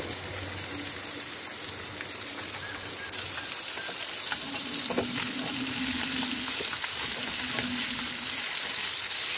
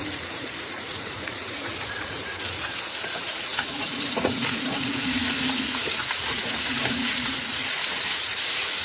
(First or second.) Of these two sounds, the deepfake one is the second